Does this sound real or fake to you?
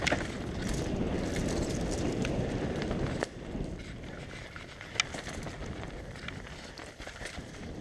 real